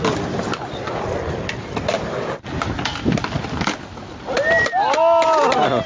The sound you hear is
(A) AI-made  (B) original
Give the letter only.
B